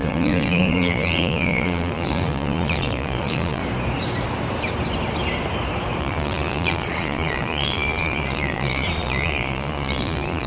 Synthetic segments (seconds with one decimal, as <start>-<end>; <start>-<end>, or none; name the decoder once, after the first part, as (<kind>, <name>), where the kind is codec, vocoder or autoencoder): 0.0-3.6 (vocoder, Vocos); 6.0-10.5